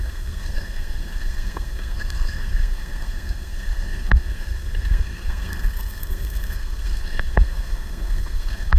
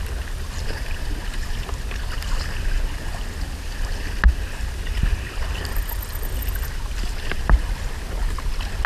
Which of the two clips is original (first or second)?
second